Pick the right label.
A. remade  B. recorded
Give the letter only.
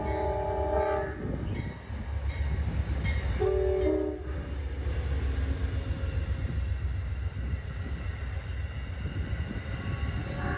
B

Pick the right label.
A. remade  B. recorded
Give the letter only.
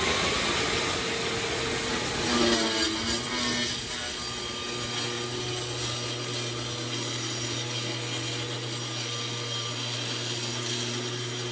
B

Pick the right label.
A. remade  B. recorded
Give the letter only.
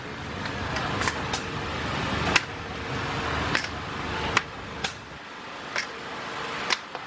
B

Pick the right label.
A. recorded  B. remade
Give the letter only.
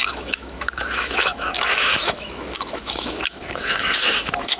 B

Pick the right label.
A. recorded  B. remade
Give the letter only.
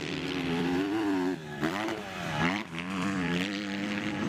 B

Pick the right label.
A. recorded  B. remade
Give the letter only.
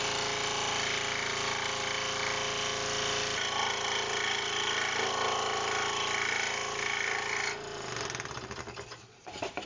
A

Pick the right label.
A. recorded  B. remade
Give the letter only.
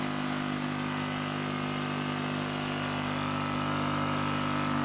A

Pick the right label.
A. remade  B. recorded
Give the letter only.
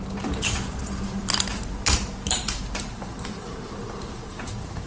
A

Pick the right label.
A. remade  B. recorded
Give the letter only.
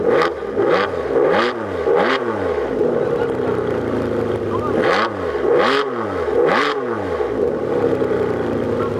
B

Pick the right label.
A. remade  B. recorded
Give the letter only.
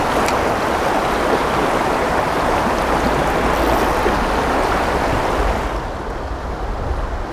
B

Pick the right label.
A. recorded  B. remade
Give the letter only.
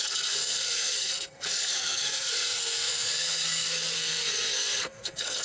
B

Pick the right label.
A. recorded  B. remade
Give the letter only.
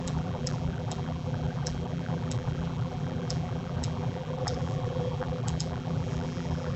B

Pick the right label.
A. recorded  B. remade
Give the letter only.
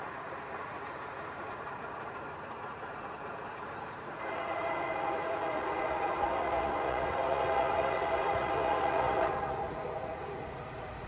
B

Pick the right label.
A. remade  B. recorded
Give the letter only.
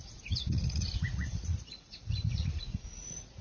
A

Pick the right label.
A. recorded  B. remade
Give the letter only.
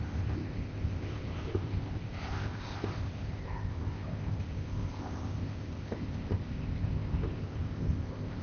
B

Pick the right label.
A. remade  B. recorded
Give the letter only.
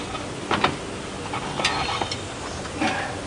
B